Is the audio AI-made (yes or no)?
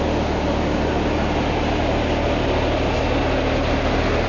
no